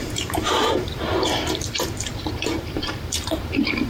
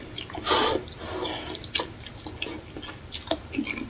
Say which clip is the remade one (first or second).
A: first